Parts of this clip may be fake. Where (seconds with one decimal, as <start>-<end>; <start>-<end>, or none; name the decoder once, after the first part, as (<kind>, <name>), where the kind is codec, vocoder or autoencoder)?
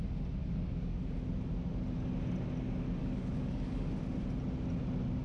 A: 0.4-1.1 (codec, DAC); 3.0-3.9